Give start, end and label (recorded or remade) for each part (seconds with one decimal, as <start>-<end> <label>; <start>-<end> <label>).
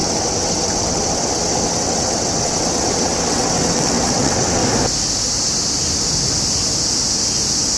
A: 0.0-4.6 remade; 4.6-7.8 recorded